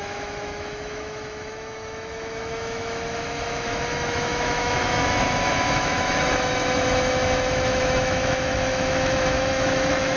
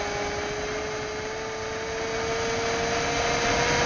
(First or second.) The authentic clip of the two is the second